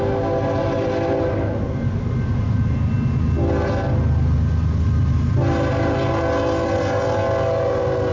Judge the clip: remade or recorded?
recorded